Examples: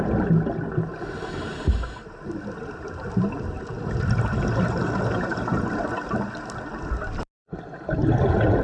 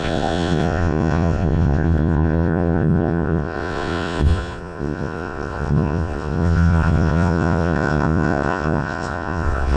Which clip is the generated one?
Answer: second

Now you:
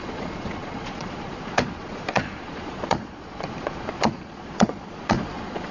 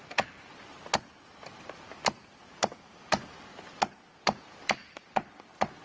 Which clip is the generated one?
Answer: first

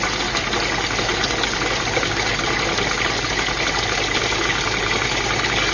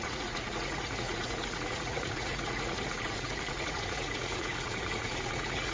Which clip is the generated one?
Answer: second